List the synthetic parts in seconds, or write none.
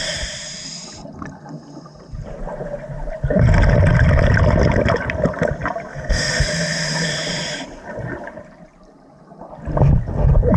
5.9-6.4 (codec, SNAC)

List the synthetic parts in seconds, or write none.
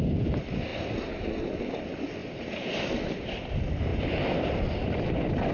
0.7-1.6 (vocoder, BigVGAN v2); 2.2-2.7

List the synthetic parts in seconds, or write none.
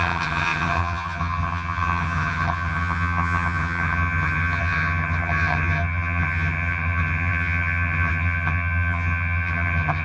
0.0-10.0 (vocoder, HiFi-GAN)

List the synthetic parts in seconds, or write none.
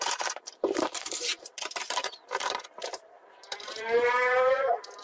0.0-5.0 (vocoder, BigVGAN v2)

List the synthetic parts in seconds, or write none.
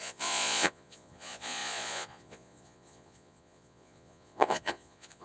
0.0-5.2 (vocoder, Vocos)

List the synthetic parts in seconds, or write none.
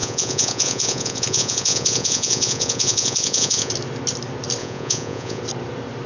0.0-3.7 (vocoder, Vocos); 4.6-5.4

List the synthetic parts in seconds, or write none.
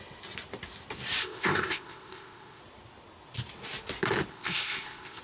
1.2-2.6 (codec, ZipCodec); 4.3-5.2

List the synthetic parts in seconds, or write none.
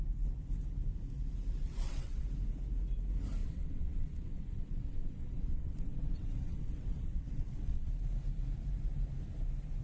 1.6-2.2 (vocoder, WaveNeXt); 3.4-7.9